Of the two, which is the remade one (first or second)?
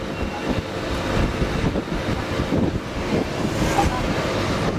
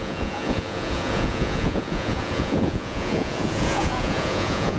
second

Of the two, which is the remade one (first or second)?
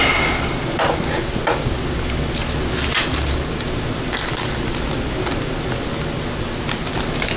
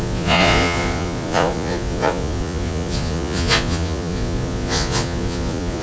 second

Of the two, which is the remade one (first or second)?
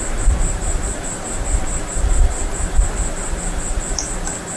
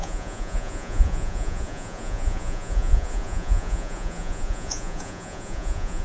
second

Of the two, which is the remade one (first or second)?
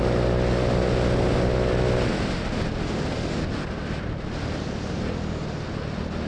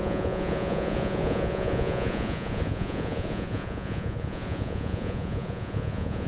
second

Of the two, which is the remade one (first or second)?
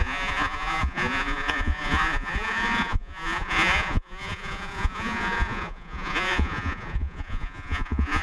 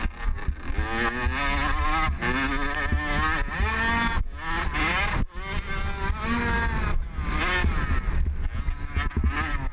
first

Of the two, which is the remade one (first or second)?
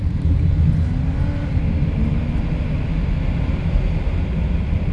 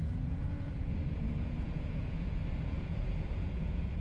second